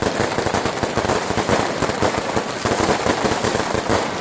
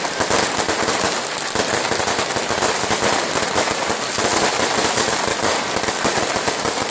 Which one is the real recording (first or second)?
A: second